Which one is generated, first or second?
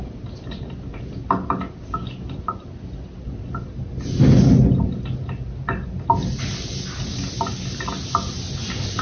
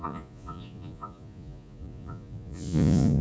second